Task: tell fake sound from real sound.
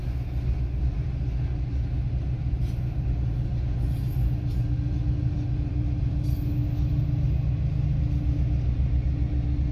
real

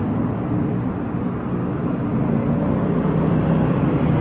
real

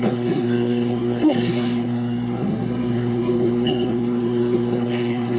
fake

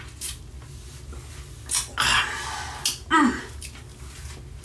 real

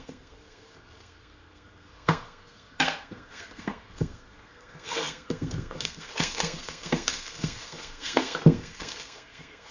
fake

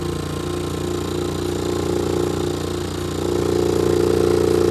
real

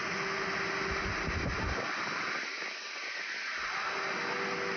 real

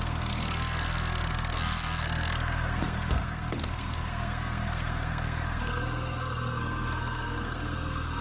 fake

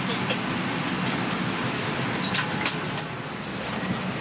real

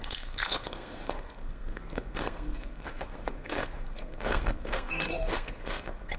fake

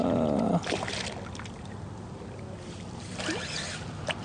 real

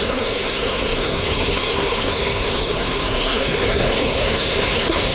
fake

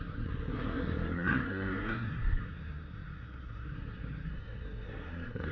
fake